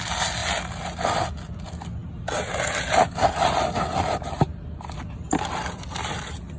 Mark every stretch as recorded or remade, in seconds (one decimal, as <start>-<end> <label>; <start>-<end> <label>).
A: 0.0-6.6 recorded